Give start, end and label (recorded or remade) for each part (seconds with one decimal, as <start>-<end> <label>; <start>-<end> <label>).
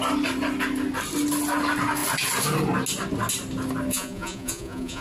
0.0-3.9 recorded; 3.9-5.0 remade